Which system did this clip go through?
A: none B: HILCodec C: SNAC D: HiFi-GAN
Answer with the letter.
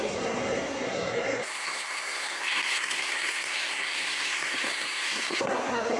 C